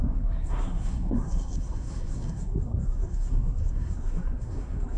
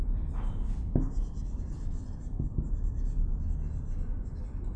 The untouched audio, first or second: second